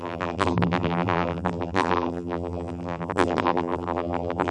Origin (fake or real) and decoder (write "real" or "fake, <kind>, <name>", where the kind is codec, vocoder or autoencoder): fake, vocoder, BigVGAN v2